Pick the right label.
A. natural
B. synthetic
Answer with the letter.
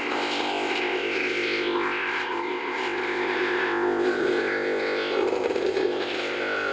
B